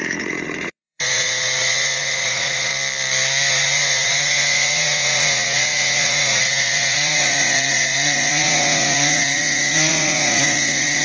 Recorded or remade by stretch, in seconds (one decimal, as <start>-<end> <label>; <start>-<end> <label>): 0.0-2.7 remade; 2.7-3.5 recorded; 3.5-11.0 remade